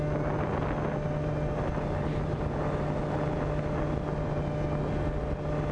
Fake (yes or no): no